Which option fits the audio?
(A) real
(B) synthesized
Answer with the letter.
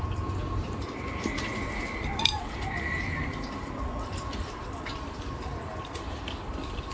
B